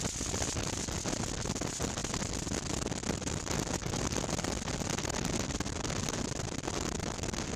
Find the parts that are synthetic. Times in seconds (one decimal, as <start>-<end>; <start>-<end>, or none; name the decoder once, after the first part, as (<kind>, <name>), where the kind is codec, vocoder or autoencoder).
none